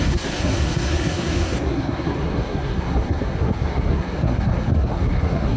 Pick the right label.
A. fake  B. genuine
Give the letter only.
A